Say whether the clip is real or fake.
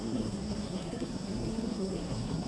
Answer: fake